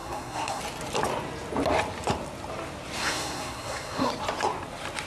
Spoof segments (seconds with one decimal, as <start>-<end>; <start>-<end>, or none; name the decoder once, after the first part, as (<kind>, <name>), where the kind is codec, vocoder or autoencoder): 0.0-0.6 (codec, SNAC); 3.0-4.1